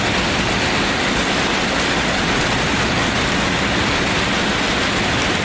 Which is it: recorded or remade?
recorded